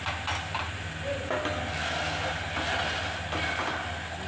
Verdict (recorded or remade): recorded